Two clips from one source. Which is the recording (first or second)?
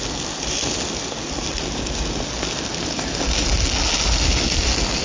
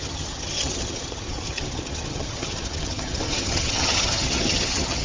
first